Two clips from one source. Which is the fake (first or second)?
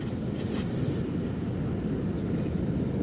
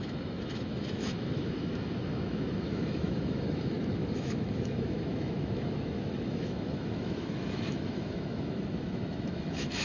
second